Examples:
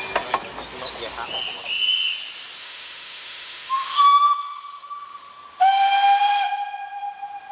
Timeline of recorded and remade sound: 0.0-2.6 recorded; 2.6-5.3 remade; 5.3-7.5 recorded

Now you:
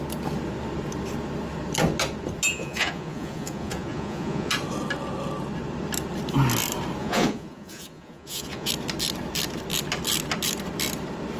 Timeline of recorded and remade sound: 0.0-2.5 recorded; 2.5-4.5 remade; 4.5-7.0 recorded; 7.0-8.7 remade; 8.7-11.4 recorded

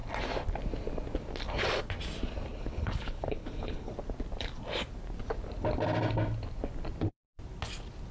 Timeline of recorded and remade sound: 0.0-2.5 recorded; 2.5-3.9 remade; 3.9-8.1 recorded